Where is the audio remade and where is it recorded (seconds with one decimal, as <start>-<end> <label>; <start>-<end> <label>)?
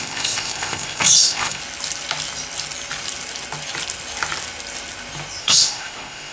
0.0-1.6 remade; 1.6-5.4 recorded; 5.4-6.3 remade